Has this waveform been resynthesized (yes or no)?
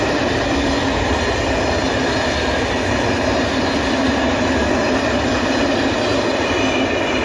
no